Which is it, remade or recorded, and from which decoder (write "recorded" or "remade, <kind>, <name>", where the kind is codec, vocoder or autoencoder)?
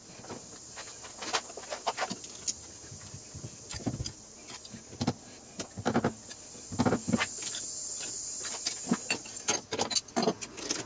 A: recorded